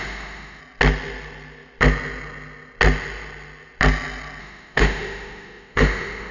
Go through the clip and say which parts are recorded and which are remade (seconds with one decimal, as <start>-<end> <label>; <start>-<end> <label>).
0.0-0.6 remade; 0.6-4.4 recorded; 4.4-6.3 remade